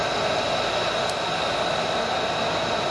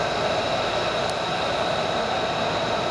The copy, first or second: second